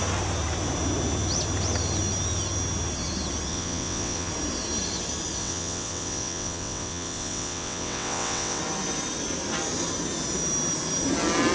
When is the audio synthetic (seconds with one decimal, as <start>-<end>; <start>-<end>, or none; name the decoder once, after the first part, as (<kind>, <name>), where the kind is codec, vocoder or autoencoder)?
3.5-4.3 (vocoder, WaveNeXt); 5.4-8.6